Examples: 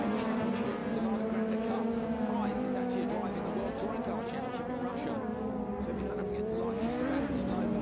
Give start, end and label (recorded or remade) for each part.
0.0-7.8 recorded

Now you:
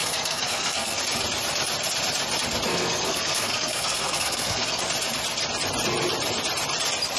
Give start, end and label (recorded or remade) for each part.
0.0-1.0 remade; 1.0-2.7 recorded; 2.7-4.8 remade; 4.8-7.2 recorded

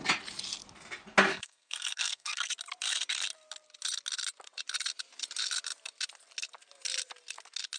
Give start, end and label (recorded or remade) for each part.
0.0-1.3 recorded; 1.3-2.5 remade; 2.5-7.8 recorded

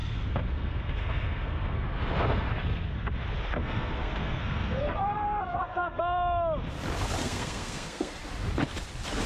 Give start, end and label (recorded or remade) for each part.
0.0-3.1 remade; 3.1-3.6 recorded; 3.6-6.0 remade; 6.0-7.2 recorded; 7.2-8.2 remade; 8.2-9.3 recorded

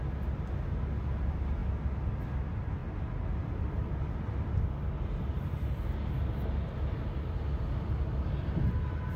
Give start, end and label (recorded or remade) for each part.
0.0-9.2 recorded

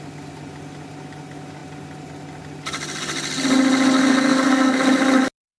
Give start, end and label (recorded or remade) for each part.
0.0-4.0 recorded; 4.0-4.8 remade; 4.8-5.6 recorded